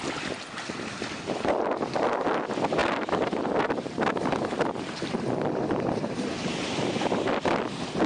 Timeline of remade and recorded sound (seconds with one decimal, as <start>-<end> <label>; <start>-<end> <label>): 0.0-8.1 recorded